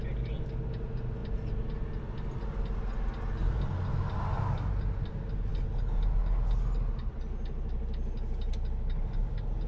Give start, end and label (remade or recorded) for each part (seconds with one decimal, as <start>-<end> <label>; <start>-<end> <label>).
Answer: 0.0-9.7 recorded